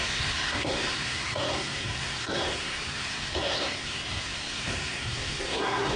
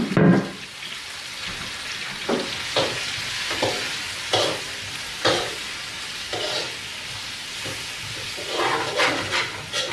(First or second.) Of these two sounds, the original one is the second